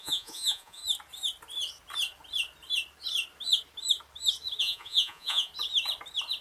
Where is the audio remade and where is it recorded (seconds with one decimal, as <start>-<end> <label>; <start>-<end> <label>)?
0.0-0.8 remade; 0.8-4.6 recorded; 4.6-5.5 remade; 5.5-6.4 recorded